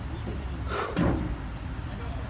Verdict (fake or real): real